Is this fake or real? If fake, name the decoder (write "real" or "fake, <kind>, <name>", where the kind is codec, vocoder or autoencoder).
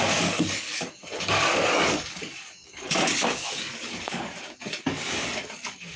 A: fake, codec, DAC